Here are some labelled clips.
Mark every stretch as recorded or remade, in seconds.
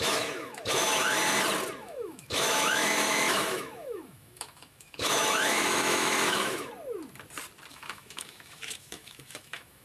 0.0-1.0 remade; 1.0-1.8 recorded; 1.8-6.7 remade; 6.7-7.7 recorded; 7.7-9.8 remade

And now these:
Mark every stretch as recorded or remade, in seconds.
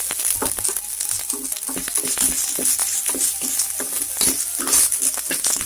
0.0-2.8 recorded; 2.8-3.5 remade; 3.5-4.5 recorded; 4.5-5.1 remade; 5.1-5.7 recorded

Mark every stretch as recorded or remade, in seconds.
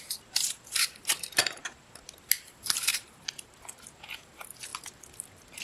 0.0-5.6 recorded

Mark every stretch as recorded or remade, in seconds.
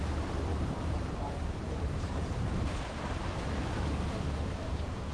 0.0-0.5 recorded; 0.5-3.6 remade; 3.6-5.1 recorded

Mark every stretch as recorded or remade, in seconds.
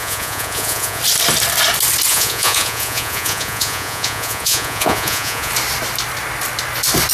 0.0-1.0 remade; 1.0-2.1 recorded; 2.1-5.5 remade; 5.5-7.1 recorded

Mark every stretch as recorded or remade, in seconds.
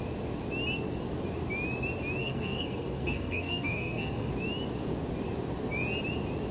0.0-2.2 recorded; 2.2-4.3 remade; 4.3-6.5 recorded